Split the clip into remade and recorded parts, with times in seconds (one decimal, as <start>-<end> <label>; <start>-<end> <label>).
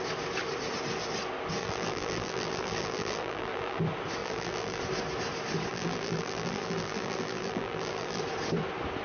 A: 0.0-1.6 recorded; 1.6-3.8 remade; 3.8-4.2 recorded; 4.2-4.8 remade; 4.8-5.7 recorded; 5.7-8.2 remade; 8.2-9.0 recorded